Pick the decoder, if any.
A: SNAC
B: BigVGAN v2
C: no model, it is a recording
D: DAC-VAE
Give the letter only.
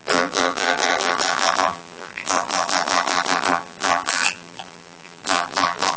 B